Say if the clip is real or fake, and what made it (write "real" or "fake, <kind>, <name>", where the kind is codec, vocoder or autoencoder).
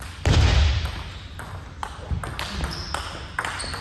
real